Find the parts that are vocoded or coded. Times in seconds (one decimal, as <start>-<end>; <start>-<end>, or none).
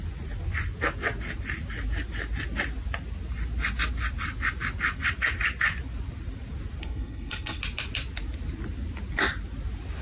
6.8-7.6